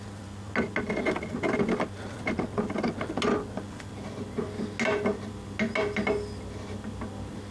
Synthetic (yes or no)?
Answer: no